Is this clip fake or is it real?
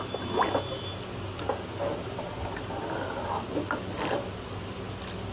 real